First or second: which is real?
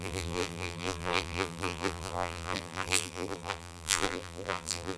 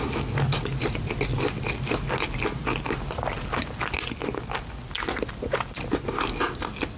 second